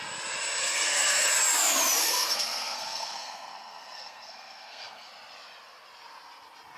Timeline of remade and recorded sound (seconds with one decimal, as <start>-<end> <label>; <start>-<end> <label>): 0.0-0.6 recorded; 0.6-1.3 remade; 1.3-2.0 recorded; 2.0-5.1 remade; 5.1-6.8 recorded